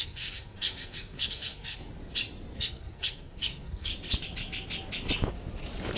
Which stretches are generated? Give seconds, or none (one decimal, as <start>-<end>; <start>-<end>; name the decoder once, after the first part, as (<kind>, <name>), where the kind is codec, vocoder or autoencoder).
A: 0.0-1.8 (codec, SNAC); 2.6-3.9